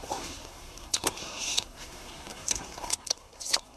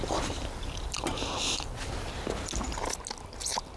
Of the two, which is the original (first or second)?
second